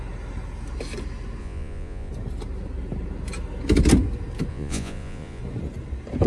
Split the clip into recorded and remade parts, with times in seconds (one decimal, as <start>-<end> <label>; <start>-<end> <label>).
0.0-1.4 recorded; 1.4-2.1 remade; 2.1-4.5 recorded; 4.5-5.4 remade; 5.4-6.3 recorded